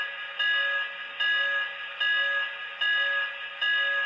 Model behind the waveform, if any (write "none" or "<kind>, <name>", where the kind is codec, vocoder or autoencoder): none